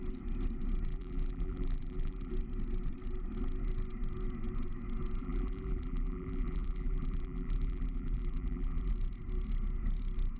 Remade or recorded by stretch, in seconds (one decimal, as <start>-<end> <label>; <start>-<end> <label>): 0.0-0.9 recorded; 0.9-2.3 remade; 2.3-5.2 recorded; 5.2-8.9 remade; 8.9-10.4 recorded